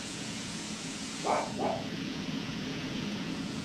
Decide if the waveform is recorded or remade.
remade